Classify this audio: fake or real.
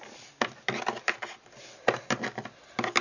real